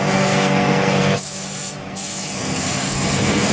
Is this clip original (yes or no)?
no